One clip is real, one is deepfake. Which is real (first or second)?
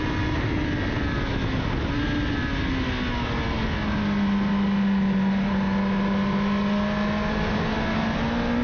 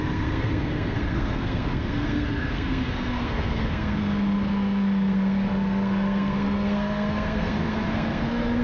first